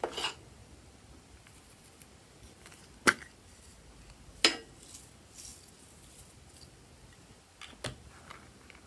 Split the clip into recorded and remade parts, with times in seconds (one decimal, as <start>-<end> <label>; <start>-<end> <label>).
0.0-8.9 recorded